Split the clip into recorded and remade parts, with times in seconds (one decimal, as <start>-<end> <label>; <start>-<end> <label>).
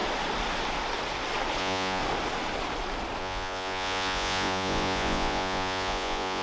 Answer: 0.0-1.6 recorded; 1.6-2.0 remade; 2.0-3.2 recorded; 3.2-6.4 remade